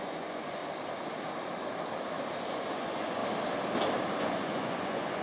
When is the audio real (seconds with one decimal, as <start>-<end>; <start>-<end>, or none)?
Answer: 0.6-2.5; 3.2-4.2

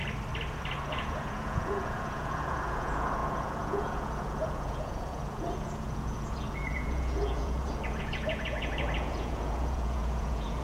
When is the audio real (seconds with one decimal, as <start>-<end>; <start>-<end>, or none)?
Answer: 0.0-0.8

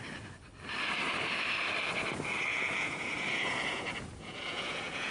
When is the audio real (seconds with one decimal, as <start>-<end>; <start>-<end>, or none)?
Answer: 0.0-2.5